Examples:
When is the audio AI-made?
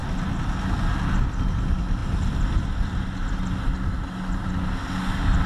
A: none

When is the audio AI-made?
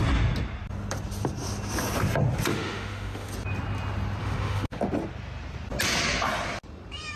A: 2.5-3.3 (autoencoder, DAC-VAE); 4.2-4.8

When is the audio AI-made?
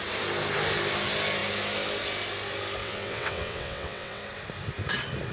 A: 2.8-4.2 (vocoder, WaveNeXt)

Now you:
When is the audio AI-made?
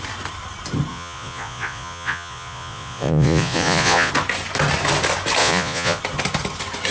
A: 0.9-4.1 (vocoder, Vocos); 5.4-6.0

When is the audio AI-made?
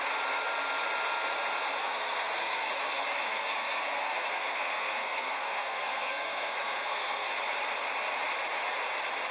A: 1.8-2.7 (codec, SNAC); 3.2-7.3